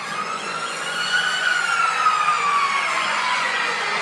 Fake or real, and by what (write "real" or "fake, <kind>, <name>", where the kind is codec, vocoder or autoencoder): fake, vocoder, Vocos